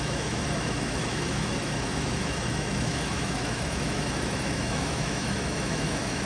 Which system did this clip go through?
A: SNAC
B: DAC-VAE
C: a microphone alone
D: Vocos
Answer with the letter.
B